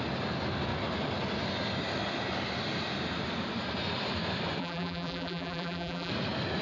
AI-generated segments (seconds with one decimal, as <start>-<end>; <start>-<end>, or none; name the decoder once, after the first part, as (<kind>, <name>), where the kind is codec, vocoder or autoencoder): 4.6-6.1 (vocoder, BigVGAN v2)